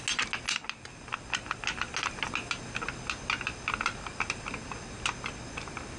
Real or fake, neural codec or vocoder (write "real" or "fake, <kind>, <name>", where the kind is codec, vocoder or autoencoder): real